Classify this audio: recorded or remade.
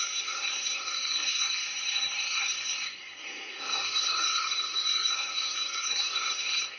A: remade